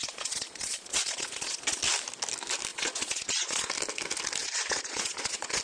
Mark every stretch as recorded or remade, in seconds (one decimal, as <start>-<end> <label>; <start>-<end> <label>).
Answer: 0.0-1.8 remade; 1.8-2.7 recorded; 2.7-3.7 remade; 3.7-4.4 recorded; 4.4-5.6 remade